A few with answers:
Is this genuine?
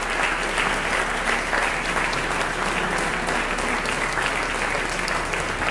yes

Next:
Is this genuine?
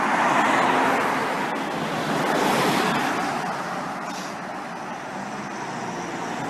yes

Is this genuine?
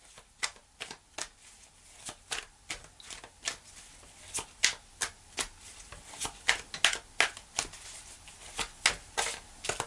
yes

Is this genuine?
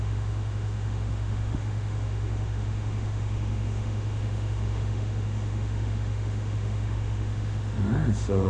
no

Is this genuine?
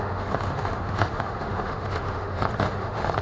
no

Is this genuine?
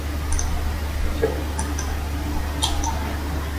yes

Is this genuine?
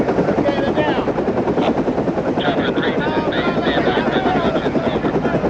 yes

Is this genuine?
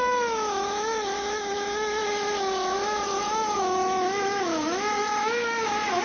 no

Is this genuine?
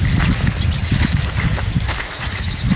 yes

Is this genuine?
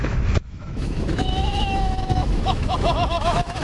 no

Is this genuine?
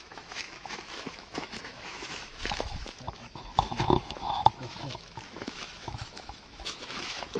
no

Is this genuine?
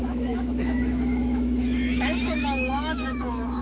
no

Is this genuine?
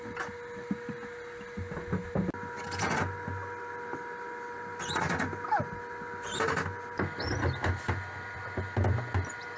yes